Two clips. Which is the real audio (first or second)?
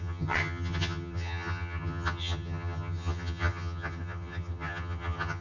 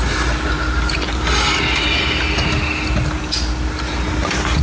second